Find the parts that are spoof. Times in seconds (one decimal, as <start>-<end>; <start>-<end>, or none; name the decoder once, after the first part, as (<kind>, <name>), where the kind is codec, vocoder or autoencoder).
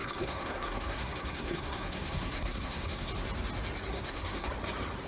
0.0-3.1 (codec, SNAC); 3.9-4.5